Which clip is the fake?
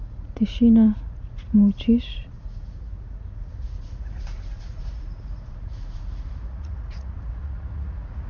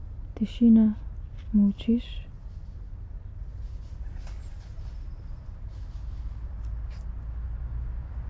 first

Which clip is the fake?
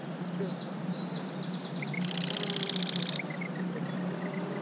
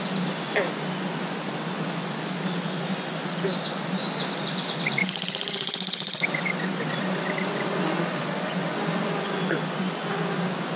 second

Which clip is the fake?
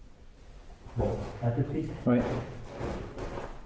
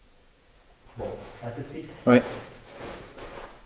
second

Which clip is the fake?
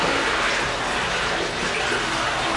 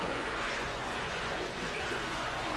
second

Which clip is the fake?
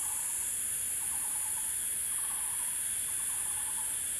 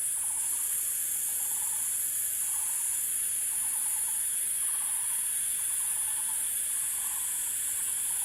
second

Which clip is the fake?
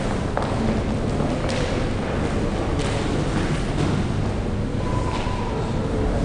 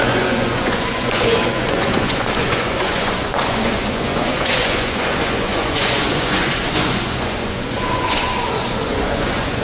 second